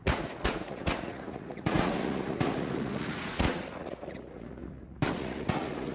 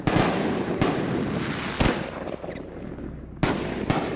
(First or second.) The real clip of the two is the second